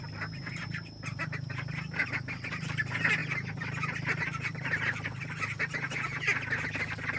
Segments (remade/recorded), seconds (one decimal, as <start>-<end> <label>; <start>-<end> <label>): 0.0-7.2 recorded